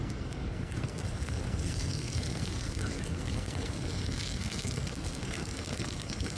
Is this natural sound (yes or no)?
no